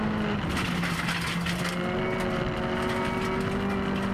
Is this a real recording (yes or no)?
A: yes